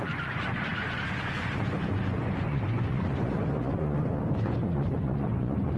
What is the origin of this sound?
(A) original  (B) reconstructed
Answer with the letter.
B